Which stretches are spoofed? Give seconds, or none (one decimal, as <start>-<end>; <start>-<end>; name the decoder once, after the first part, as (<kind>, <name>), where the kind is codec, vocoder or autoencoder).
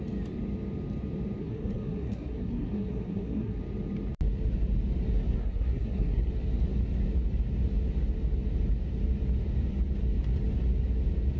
1.4-3.6 (codec, SNAC); 5.4-6.3